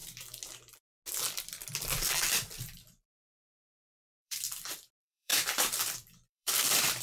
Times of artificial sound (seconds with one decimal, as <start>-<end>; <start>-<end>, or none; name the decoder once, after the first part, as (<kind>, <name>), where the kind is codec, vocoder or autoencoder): 2.3-7.0 (vocoder, BigVGAN v2)